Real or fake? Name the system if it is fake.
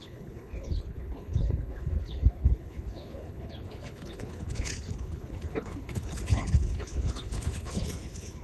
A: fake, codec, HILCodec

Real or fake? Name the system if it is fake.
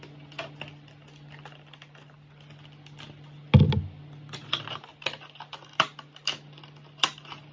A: real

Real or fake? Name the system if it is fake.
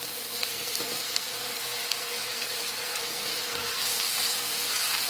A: fake, codec, SNAC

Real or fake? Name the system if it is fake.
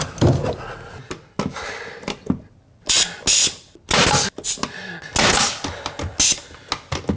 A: real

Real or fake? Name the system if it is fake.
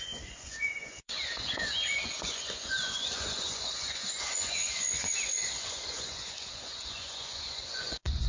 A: fake, vocoder, Vocos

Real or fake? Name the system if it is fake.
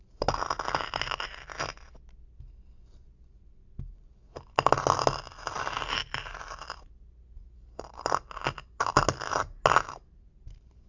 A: real